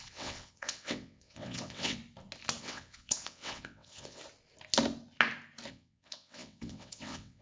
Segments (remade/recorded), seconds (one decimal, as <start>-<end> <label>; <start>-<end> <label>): 0.0-2.0 remade; 2.0-2.6 recorded; 2.6-4.2 remade; 4.2-5.7 recorded; 5.7-7.4 remade